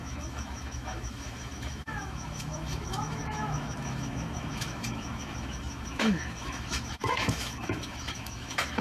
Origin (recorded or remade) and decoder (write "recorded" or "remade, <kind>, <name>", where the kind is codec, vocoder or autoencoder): remade, autoencoder, DAC-VAE